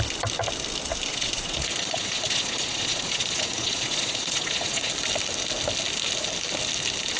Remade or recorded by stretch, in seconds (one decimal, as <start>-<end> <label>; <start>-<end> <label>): 0.0-1.1 recorded; 1.1-4.9 remade; 4.9-7.2 recorded